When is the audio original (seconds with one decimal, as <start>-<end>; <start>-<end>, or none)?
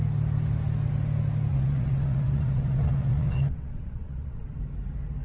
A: 0.0-1.5; 4.6-5.2